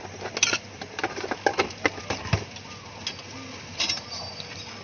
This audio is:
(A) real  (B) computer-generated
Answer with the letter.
A